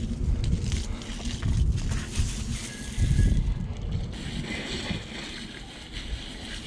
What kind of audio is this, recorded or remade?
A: recorded